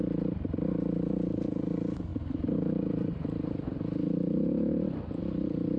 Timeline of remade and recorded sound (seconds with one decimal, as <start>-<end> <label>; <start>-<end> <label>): 0.0-5.8 recorded